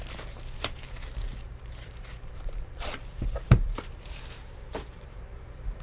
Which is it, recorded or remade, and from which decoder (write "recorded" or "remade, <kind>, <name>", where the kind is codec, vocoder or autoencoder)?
remade, vocoder, BigVGAN v2